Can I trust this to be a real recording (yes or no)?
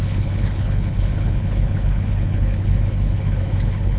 no